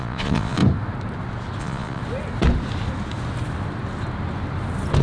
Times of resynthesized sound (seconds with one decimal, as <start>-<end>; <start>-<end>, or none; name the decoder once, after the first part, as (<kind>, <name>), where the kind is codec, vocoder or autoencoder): 0.0-0.6 (vocoder, Vocos); 1.6-2.0